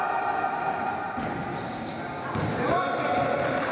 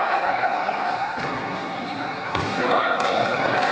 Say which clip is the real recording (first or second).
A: first